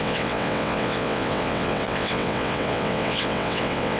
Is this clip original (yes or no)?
no